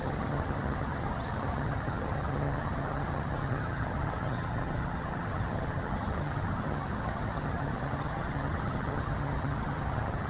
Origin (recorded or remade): remade